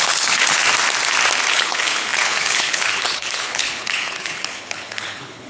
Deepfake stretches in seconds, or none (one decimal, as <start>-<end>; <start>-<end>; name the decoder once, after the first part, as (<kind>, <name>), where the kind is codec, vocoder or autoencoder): 0.0-0.6 (codec, HILCodec); 1.5-5.5